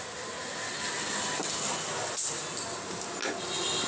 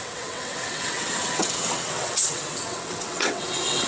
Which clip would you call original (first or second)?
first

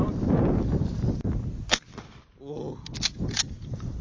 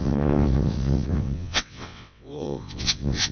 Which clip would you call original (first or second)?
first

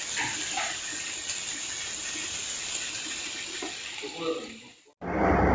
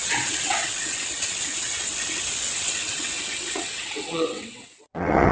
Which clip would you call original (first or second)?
first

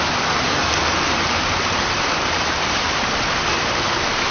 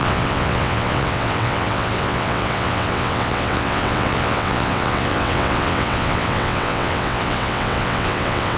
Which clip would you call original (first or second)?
first